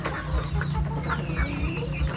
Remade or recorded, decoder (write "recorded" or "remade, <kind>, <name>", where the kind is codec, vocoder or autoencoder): recorded